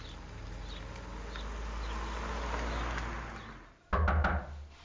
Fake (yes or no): no